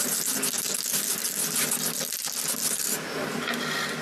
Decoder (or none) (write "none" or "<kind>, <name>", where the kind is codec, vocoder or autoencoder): none